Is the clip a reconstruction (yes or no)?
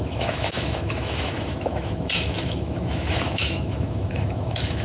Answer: yes